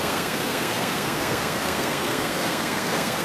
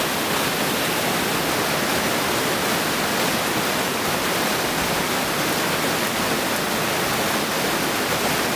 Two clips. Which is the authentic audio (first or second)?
second